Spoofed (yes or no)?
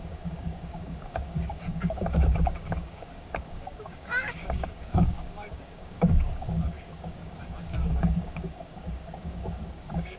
yes